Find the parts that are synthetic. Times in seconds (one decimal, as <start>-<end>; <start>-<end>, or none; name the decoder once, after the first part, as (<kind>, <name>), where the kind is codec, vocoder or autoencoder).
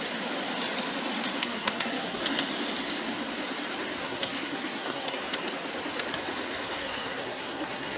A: 1.4-2.2 (codec, SNAC); 4.0-5.2; 6.8-8.0